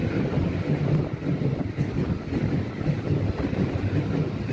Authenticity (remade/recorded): recorded